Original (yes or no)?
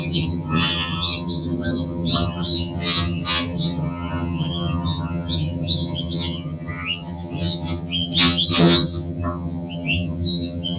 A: no